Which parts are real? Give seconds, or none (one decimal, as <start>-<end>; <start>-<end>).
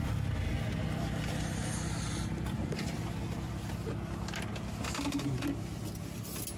0.0-6.6